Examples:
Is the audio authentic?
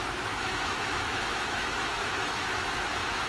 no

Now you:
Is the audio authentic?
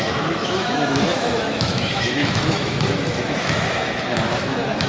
no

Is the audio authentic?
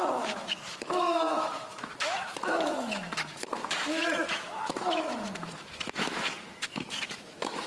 no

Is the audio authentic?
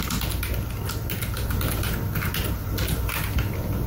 yes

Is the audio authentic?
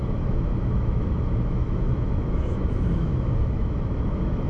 no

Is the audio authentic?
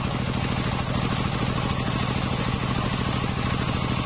yes